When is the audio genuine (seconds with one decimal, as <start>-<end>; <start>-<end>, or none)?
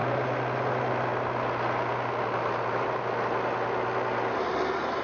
0.0-5.0